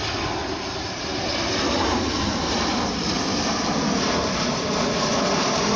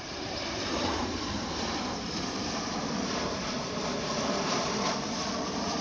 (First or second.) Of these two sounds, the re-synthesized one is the second